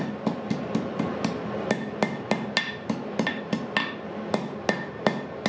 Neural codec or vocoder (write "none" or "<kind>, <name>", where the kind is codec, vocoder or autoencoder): none